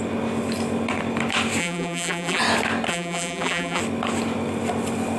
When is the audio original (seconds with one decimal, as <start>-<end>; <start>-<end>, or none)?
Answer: 0.0-1.6; 2.4-2.9; 3.8-5.2